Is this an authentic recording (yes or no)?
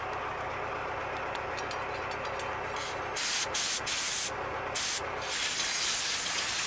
yes